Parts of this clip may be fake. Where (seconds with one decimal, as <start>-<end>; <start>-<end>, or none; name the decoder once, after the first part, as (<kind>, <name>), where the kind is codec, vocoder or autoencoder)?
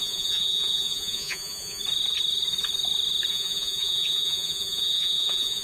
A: 0.0-1.8 (vocoder, Vocos); 3.3-5.6